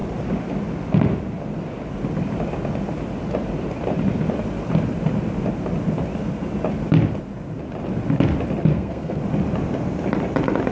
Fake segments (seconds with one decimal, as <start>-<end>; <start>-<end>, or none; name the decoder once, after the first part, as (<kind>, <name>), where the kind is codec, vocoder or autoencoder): 8.7-9.2 (codec, SNAC)

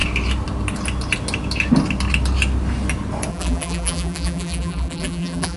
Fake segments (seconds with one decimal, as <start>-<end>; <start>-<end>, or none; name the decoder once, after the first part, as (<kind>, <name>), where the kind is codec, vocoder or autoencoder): 3.3-5.6 (vocoder, BigVGAN v2)